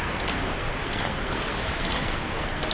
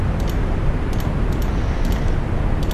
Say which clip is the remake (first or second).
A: first